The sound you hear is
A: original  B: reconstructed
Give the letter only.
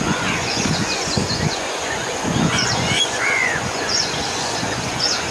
B